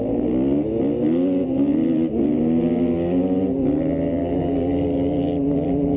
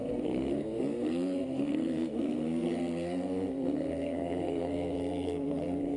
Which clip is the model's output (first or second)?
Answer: second